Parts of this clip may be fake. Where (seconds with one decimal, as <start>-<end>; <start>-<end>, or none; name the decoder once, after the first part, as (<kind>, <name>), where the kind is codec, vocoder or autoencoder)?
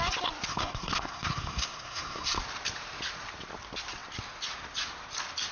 0.5-2.4 (codec, SNAC)